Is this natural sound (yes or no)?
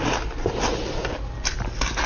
yes